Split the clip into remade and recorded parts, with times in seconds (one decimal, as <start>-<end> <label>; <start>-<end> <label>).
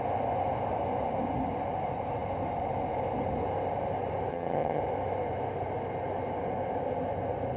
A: 0.0-4.3 recorded; 4.3-4.8 remade; 4.8-7.6 recorded